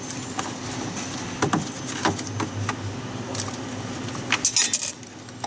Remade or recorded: recorded